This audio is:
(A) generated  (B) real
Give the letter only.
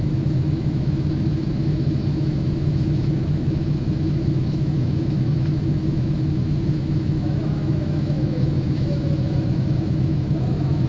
A